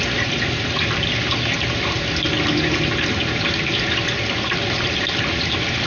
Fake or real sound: real